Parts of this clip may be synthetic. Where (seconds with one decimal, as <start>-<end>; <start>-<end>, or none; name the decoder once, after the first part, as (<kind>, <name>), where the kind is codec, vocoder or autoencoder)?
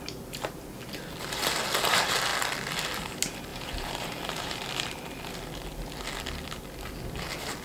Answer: 3.5-4.6 (vocoder, BigVGAN v2)